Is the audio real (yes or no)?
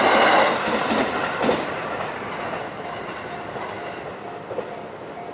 yes